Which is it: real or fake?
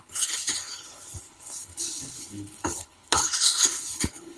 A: fake